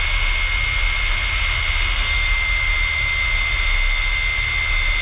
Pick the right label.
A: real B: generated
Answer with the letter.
A